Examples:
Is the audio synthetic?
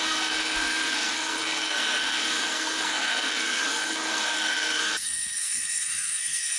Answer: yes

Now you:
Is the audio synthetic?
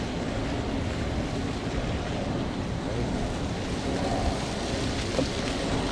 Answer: no